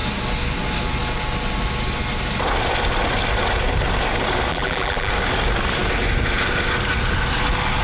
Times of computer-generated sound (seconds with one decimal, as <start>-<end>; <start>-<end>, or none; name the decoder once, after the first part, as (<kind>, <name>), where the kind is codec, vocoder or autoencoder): 4.5-5.1 (vocoder, BigVGAN v2)